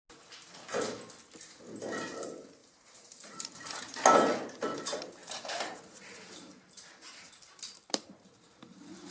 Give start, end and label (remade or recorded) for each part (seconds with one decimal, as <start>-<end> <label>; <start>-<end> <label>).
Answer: 0.0-2.6 recorded; 2.6-3.8 remade; 3.8-5.2 recorded; 5.2-9.1 remade